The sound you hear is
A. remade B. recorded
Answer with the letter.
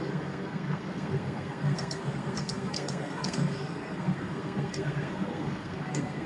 A